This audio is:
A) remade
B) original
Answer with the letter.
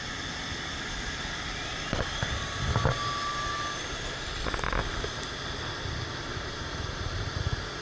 B